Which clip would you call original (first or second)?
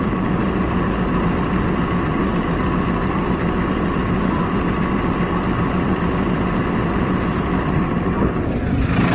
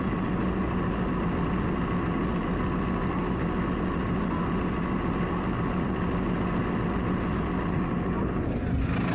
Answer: second